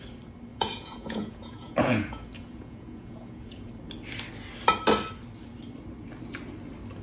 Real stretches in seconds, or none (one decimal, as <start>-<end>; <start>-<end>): 0.0-0.5; 3.7-7.0